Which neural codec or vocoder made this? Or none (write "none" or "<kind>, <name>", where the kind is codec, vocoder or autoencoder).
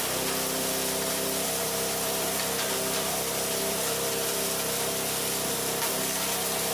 vocoder, BigVGAN v2